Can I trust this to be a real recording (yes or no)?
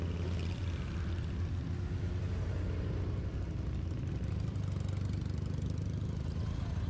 yes